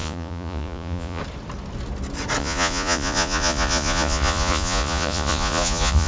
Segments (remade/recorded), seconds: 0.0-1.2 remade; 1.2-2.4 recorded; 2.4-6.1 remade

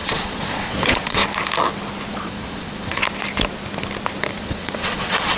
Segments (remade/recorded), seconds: 0.0-1.2 remade; 1.2-2.1 recorded; 2.1-3.0 remade; 3.0-4.3 recorded; 4.3-5.4 remade

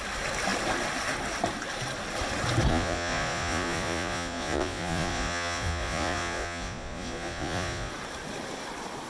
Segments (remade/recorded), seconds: 0.0-2.7 recorded; 2.7-7.9 remade; 7.9-9.1 recorded